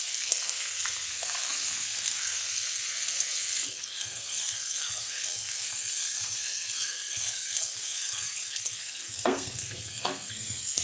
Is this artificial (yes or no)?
yes